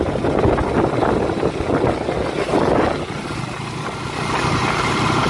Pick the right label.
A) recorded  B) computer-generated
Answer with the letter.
A